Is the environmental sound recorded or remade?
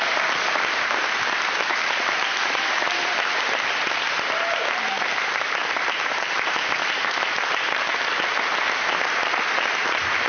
remade